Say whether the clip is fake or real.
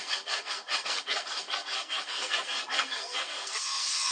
fake